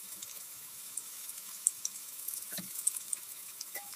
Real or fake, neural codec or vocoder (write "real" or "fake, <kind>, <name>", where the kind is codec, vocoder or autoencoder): fake, autoencoder, DAC-VAE